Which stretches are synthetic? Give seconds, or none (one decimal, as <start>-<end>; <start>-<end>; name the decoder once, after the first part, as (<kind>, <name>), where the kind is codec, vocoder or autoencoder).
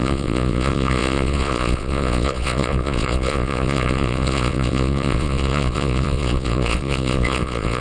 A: 0.0-7.8 (vocoder, Vocos)